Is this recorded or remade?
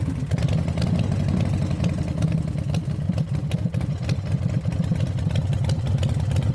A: recorded